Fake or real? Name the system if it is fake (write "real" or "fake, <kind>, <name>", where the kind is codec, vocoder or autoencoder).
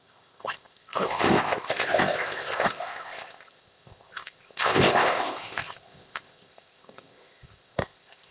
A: fake, codec, ZipCodec